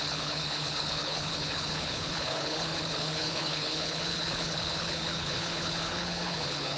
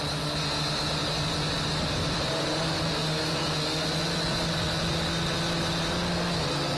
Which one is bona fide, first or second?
second